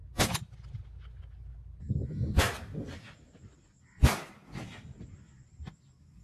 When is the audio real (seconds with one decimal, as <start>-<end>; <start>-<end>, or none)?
0.0-1.9; 4.4-5.0